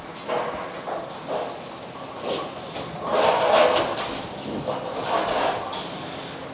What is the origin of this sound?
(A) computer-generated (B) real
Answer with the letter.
B